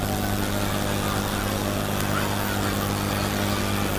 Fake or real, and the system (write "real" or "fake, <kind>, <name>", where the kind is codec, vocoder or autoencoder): real